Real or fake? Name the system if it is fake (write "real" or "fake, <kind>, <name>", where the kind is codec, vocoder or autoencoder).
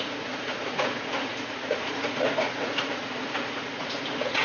fake, vocoder, Vocos